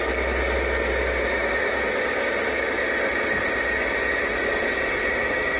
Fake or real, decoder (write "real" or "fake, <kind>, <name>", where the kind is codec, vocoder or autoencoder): real